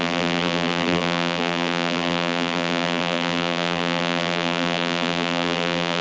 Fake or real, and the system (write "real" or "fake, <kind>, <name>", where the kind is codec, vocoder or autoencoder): fake, vocoder, BigVGAN v2